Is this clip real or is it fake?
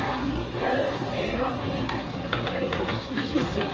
fake